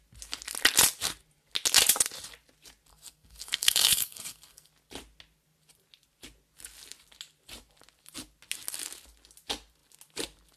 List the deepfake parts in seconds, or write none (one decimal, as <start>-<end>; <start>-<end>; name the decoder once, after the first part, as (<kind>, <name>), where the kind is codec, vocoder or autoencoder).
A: 2.9-4.7 (codec, SNAC)